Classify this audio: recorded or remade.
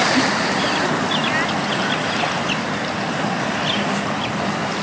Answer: recorded